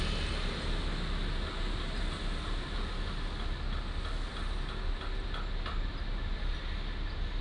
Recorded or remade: recorded